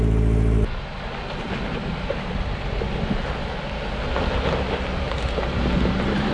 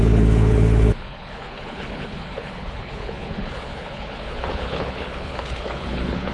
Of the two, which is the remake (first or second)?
second